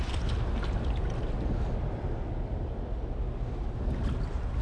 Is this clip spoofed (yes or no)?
no